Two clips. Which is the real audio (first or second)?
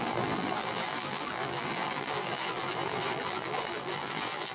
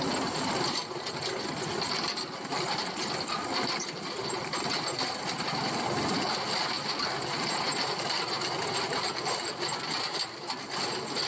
second